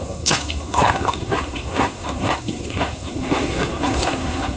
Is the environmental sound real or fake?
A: fake